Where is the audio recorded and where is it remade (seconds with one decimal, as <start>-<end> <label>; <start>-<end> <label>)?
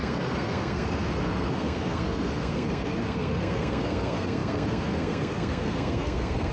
0.0-6.5 remade